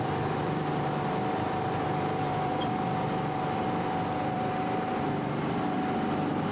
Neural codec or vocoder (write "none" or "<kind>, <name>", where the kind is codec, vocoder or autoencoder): vocoder, BigVGAN v2